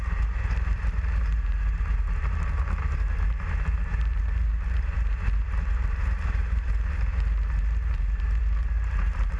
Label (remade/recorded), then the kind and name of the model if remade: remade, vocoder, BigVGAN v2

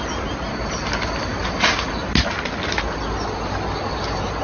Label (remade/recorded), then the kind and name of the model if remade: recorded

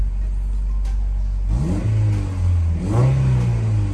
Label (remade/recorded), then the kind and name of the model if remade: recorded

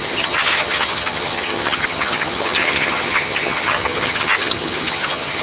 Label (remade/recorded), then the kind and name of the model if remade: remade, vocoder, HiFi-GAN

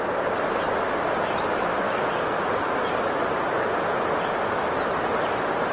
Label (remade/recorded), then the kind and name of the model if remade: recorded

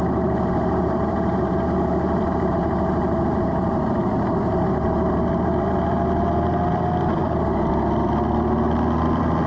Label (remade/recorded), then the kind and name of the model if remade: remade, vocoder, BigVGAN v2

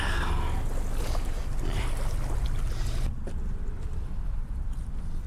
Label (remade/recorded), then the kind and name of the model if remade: recorded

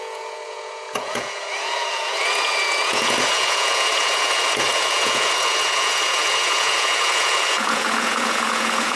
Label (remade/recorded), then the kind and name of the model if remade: remade, vocoder, Vocos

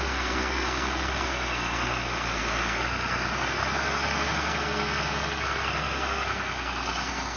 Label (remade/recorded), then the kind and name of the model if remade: remade, codec, SNAC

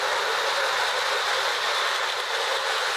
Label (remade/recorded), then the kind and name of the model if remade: recorded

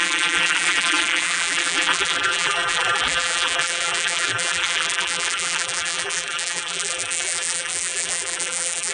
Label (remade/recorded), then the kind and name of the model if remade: remade, vocoder, BigVGAN v2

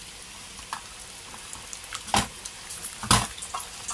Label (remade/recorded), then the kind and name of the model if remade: recorded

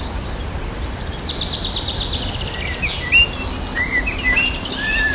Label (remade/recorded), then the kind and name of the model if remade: recorded